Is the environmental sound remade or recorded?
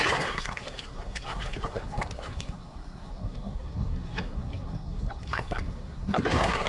remade